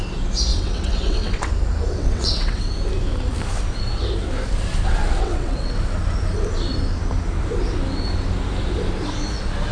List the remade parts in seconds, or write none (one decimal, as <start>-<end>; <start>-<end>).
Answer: 0.5-1.5; 2.0-2.7; 5.2-5.8